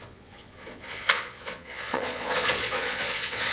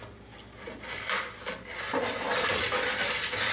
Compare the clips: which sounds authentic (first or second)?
second